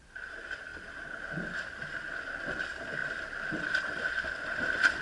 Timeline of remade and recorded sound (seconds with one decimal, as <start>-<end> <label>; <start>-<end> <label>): 0.0-3.0 recorded; 3.0-4.1 remade; 4.1-5.0 recorded

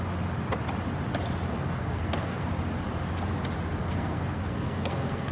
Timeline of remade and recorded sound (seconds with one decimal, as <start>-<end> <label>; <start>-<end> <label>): 0.0-1.5 recorded; 1.5-2.5 remade; 2.5-3.8 recorded; 3.8-5.3 remade

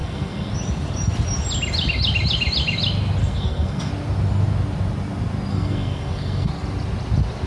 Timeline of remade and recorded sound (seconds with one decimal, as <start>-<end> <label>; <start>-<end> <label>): 0.0-0.5 remade; 0.5-3.2 recorded; 3.2-3.9 remade; 3.9-5.5 recorded; 5.5-6.5 remade; 6.5-7.5 recorded

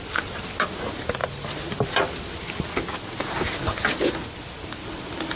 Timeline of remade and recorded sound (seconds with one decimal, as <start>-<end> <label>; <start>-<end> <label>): 0.0-5.4 recorded

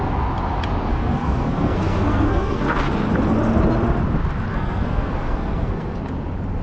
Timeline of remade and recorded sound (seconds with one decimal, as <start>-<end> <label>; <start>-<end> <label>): 0.0-0.9 recorded; 0.9-2.9 remade; 2.9-4.5 recorded; 4.5-6.0 remade; 6.0-6.6 recorded

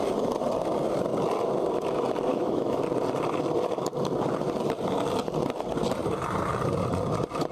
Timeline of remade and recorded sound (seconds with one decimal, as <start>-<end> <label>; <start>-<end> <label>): 0.0-2.3 recorded; 2.3-2.8 remade; 2.8-7.5 recorded

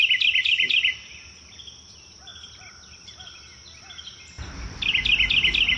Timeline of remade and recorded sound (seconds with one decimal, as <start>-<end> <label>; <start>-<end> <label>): 0.0-5.8 recorded